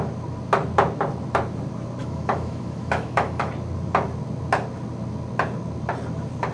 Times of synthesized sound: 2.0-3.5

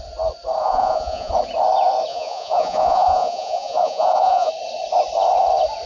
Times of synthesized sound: 0.6-1.3; 2.1-4.5

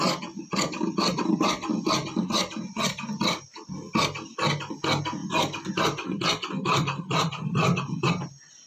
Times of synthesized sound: none

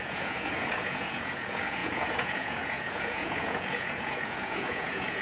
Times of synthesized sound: 0.0-5.2

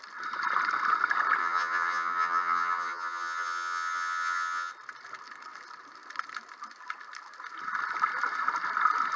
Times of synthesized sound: 1.4-4.7

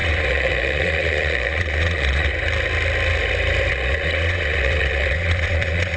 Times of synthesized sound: 0.0-2.3; 3.7-6.0

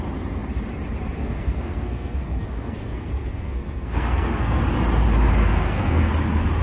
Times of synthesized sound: 1.2-4.6; 5.4-6.1

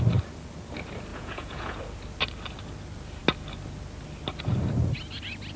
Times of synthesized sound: 1.1-1.8